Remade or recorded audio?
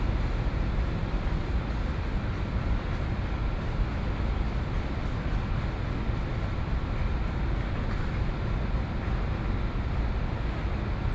recorded